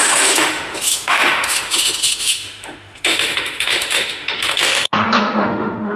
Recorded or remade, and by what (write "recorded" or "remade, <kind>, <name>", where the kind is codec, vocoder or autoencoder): remade, autoencoder, DAC-VAE